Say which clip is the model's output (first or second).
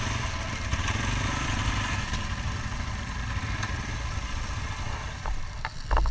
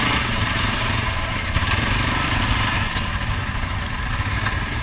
second